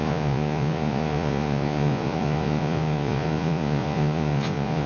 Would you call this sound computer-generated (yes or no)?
yes